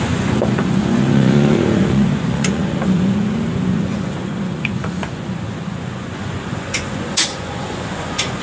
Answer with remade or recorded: remade